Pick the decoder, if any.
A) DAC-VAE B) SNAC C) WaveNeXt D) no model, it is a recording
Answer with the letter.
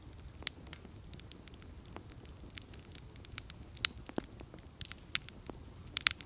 D